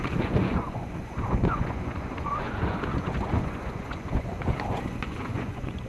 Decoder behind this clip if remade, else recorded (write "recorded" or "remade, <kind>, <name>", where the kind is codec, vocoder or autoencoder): remade, vocoder, Vocos